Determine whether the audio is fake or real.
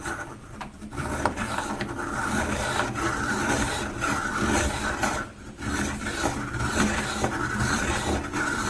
fake